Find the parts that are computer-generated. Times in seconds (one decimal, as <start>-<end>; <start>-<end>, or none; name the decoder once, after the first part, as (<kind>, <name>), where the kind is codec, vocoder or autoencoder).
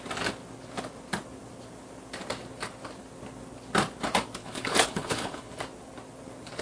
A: 4.4-5.6 (codec, HILCodec)